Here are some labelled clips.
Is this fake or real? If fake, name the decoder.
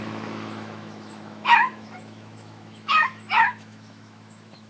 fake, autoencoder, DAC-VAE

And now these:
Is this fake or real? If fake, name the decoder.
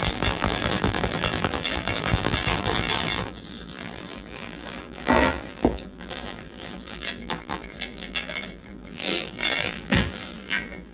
fake, vocoder, BigVGAN v2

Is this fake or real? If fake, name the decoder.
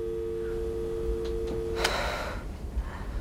real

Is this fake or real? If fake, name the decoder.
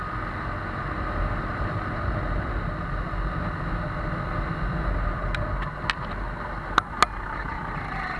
real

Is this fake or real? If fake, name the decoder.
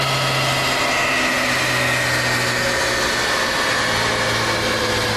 real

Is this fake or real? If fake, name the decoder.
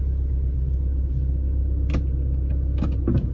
real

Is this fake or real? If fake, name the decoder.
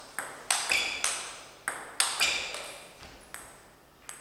real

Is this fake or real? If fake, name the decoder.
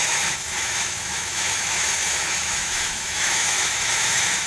fake, autoencoder, DAC-VAE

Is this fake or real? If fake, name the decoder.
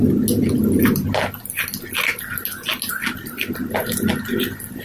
real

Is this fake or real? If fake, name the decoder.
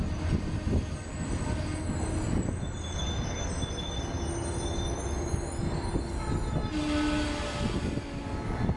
real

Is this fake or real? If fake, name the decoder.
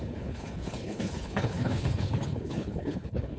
fake, codec, HILCodec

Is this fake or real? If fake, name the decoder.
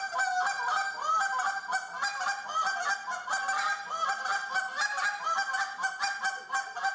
real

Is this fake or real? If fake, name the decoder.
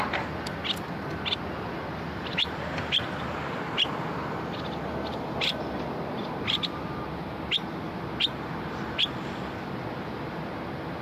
real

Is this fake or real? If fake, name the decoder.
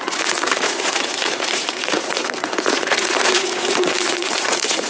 fake, vocoder, Vocos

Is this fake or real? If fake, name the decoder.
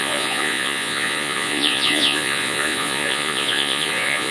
fake, vocoder, Vocos